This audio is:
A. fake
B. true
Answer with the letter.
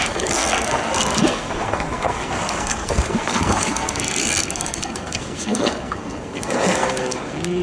A